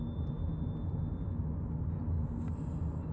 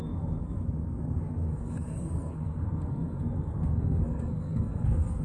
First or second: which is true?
first